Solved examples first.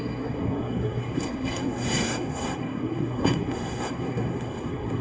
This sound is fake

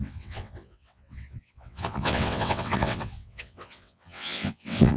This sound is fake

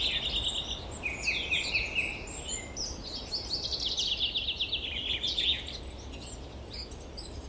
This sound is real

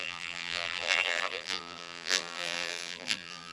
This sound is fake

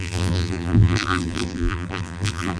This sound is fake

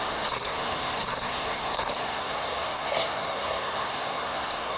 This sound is fake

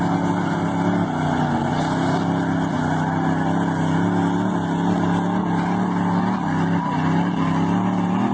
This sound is real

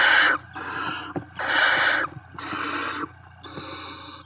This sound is real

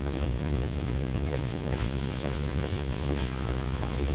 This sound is fake